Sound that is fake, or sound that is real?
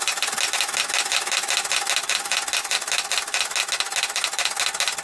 real